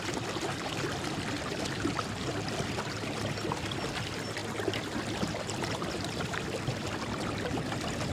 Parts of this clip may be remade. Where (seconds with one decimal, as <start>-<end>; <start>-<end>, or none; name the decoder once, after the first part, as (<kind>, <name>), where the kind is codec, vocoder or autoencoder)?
none